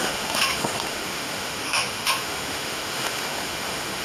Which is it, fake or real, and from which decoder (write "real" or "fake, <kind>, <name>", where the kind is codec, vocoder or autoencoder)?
fake, autoencoder, DAC-VAE